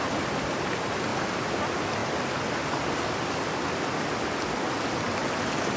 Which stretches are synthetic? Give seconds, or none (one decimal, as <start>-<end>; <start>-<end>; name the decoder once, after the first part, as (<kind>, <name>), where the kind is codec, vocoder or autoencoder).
none